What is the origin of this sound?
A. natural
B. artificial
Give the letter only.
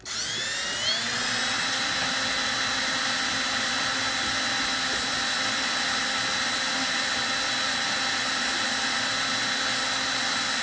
A